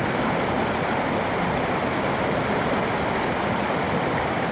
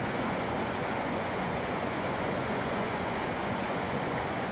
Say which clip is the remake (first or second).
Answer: second